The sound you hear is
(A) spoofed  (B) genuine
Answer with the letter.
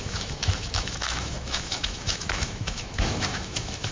A